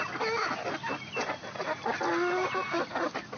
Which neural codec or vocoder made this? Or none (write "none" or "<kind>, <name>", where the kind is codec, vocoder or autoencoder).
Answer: none